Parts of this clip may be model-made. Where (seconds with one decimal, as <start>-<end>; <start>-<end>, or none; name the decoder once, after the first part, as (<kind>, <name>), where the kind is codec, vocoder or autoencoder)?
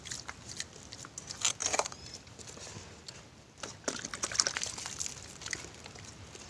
1.6-2.3 (vocoder, BigVGAN v2)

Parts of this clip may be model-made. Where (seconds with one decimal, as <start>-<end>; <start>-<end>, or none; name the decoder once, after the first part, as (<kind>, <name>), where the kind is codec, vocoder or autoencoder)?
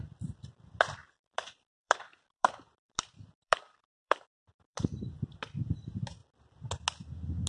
0.0-6.2 (vocoder, BigVGAN v2)